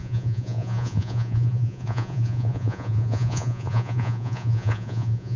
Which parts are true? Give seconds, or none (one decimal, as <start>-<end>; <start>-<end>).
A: none